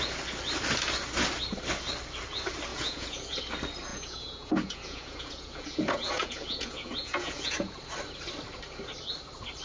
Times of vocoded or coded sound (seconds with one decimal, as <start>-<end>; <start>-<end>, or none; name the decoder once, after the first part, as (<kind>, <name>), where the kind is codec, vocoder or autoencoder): 2.7-3.4 (vocoder, Vocos); 3.9-7.8

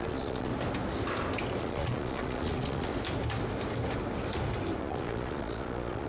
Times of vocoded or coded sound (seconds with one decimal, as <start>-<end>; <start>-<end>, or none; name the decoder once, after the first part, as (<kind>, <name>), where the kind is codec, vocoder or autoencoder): 0.0-0.5 (vocoder, Vocos); 1.6-2.9; 4.8-6.1

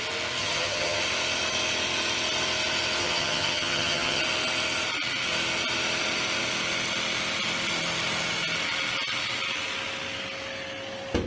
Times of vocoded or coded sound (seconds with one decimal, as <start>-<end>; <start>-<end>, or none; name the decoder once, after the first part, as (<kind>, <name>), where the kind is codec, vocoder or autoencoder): 0.4-1.0 (vocoder, HiFi-GAN); 3.0-4.2

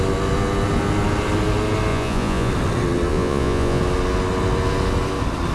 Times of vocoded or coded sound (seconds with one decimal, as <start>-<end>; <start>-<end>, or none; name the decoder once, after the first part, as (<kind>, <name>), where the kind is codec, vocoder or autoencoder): 1.9-2.5 (vocoder, Vocos); 3.1-3.8

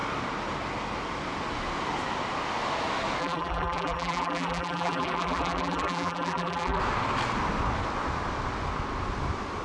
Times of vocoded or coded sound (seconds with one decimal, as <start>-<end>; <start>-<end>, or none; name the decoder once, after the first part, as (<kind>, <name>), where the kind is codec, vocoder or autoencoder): 3.2-6.8 (vocoder, BigVGAN v2)